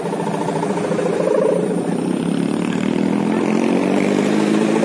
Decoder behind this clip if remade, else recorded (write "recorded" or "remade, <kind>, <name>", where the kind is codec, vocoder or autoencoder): remade, vocoder, BigVGAN v2